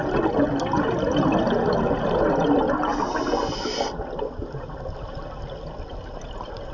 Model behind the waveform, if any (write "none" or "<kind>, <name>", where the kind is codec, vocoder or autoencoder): none